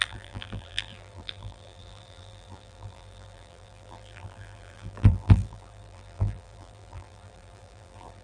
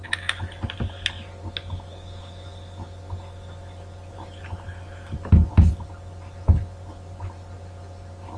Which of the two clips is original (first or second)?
second